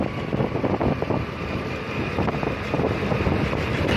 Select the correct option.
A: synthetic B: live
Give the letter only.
B